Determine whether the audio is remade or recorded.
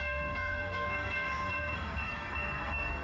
remade